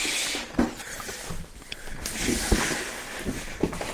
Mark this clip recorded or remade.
recorded